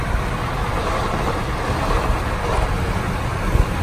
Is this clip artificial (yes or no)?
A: no